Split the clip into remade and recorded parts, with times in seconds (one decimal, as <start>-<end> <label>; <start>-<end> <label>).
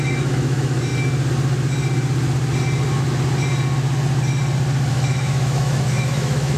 0.0-0.9 remade; 0.9-4.9 recorded; 4.9-6.6 remade